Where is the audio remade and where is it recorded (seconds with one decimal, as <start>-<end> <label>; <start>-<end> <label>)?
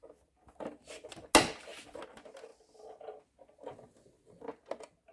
0.0-5.1 recorded